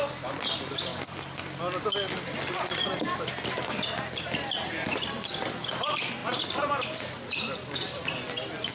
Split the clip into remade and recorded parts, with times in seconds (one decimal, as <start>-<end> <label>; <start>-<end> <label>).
0.0-8.7 recorded